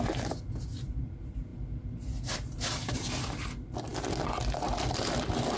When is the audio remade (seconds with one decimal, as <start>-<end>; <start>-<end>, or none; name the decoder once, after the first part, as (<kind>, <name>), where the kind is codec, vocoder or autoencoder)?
none